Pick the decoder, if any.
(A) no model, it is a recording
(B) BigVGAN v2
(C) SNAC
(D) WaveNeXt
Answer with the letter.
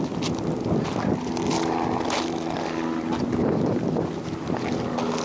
A